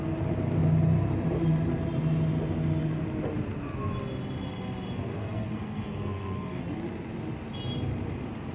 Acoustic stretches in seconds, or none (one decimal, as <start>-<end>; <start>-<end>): 0.0-5.1; 6.6-8.5